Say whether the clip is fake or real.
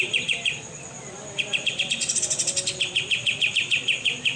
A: real